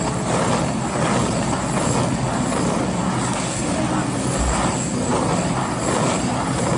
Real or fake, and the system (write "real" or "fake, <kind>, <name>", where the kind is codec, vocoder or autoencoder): real